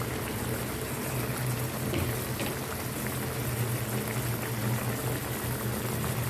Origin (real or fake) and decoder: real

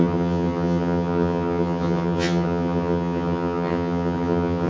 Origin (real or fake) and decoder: fake, vocoder, HiFi-GAN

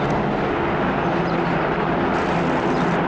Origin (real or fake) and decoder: real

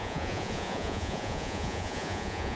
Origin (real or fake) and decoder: fake, vocoder, Vocos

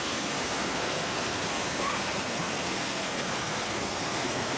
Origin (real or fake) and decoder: fake, codec, SNAC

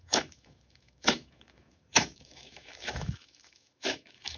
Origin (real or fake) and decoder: fake, autoencoder, DAC-VAE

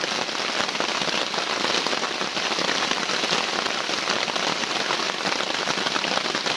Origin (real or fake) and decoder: real